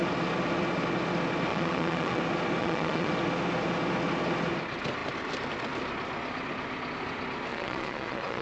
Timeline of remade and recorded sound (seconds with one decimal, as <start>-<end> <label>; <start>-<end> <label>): 0.0-1.5 recorded; 1.5-2.2 remade; 2.2-2.6 recorded; 2.6-3.1 remade; 3.1-7.5 recorded; 7.5-8.4 remade